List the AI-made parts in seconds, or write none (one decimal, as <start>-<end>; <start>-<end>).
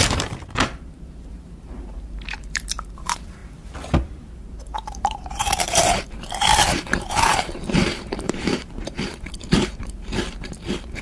0.0-3.4; 4.2-11.0